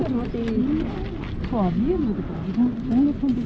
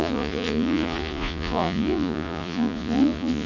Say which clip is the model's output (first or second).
second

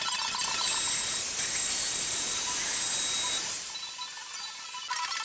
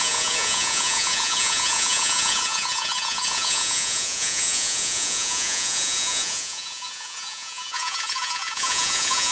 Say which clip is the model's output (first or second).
second